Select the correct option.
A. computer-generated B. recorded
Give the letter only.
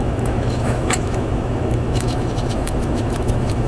A